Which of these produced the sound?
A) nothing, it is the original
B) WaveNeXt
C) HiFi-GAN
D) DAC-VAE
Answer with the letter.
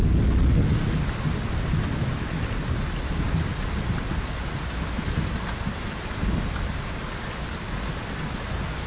A